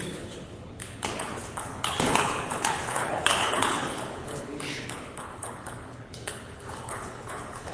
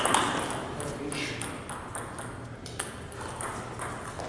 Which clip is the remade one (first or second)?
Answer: first